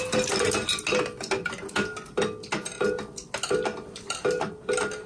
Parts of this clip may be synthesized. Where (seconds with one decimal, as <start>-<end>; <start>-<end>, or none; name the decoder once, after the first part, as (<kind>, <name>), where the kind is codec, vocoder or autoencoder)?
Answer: none